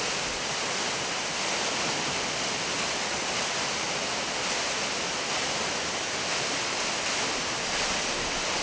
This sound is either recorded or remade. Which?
recorded